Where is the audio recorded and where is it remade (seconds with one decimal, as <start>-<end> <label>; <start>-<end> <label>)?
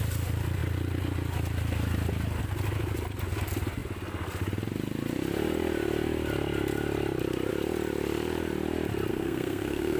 0.0-9.1 recorded; 9.1-10.0 remade